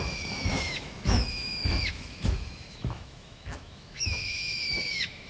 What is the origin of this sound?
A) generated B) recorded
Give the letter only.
A